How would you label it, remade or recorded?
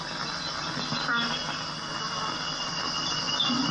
recorded